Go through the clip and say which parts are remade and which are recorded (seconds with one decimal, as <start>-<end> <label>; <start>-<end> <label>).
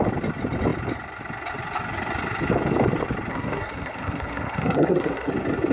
0.0-3.3 recorded; 3.3-5.3 remade; 5.3-5.7 recorded